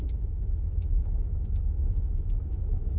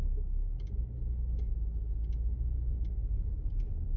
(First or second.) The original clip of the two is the second